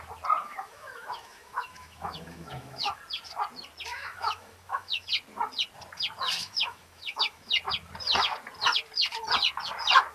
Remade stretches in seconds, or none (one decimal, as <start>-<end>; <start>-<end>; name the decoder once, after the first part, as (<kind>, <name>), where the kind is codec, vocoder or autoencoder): 0.4-3.0 (autoencoder, DAC-VAE); 3.9-5.1; 6.4-7.5